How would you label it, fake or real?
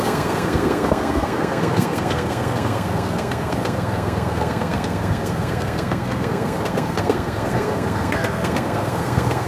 fake